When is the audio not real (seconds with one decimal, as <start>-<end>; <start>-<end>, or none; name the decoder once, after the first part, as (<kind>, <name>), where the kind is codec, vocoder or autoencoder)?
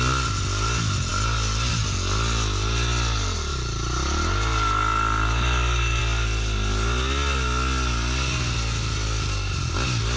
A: none